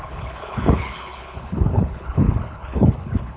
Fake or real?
fake